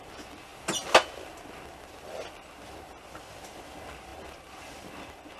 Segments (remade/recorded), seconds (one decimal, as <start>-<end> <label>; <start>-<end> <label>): 0.0-0.5 remade; 0.5-3.1 recorded; 3.1-5.4 remade